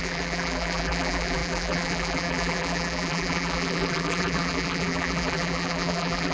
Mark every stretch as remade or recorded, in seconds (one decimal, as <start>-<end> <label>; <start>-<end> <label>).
0.0-6.3 remade